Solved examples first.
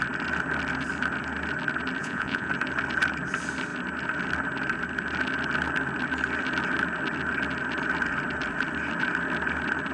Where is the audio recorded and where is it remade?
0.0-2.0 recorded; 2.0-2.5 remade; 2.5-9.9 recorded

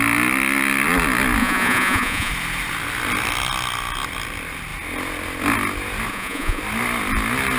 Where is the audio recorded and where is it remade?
0.0-1.4 recorded; 1.4-2.3 remade; 2.3-6.1 recorded; 6.1-6.6 remade; 6.6-7.6 recorded